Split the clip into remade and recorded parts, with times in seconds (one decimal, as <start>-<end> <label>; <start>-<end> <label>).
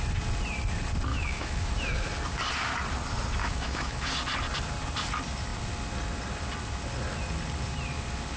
0.0-1.1 recorded; 1.1-1.7 remade; 1.7-3.4 recorded; 3.4-4.1 remade; 4.1-8.4 recorded